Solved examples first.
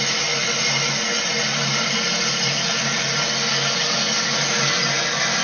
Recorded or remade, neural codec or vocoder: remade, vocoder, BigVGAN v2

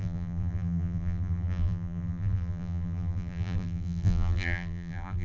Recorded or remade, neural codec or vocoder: remade, vocoder, BigVGAN v2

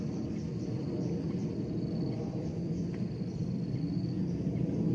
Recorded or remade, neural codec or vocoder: recorded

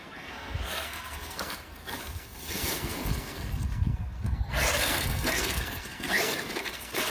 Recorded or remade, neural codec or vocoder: remade, codec, SNAC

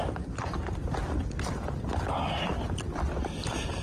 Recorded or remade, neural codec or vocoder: recorded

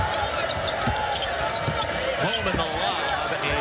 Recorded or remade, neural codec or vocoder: recorded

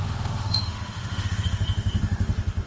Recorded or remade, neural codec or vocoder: remade, autoencoder, DAC-VAE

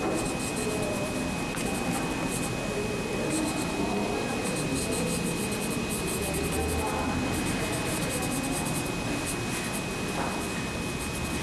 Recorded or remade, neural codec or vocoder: recorded